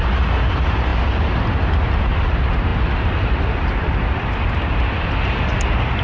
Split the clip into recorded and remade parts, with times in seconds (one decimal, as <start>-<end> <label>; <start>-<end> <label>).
0.0-6.0 recorded